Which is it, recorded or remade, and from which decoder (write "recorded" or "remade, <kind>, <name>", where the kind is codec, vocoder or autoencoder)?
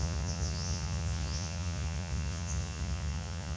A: remade, vocoder, Vocos